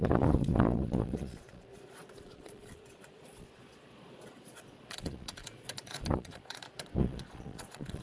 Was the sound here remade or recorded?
remade